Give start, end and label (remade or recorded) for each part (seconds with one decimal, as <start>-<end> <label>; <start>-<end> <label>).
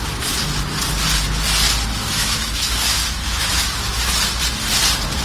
0.0-2.0 recorded; 2.0-4.1 remade; 4.1-5.2 recorded